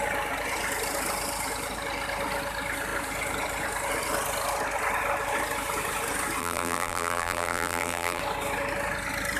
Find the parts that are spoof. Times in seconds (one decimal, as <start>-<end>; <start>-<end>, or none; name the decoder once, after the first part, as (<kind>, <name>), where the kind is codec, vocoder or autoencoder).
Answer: 6.4-8.2 (vocoder, BigVGAN v2)

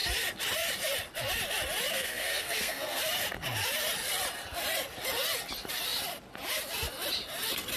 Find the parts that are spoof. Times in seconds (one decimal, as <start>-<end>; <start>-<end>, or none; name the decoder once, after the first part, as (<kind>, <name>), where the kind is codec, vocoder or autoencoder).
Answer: 1.9-3.0 (codec, SNAC)